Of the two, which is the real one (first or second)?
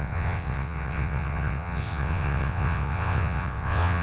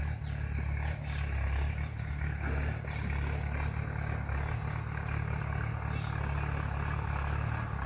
second